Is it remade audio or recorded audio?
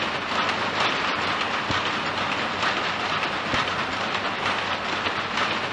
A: recorded